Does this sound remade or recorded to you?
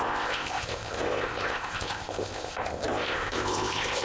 remade